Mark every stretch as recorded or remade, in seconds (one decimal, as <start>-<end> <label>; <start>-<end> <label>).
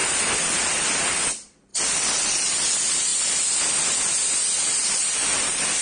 0.0-5.8 recorded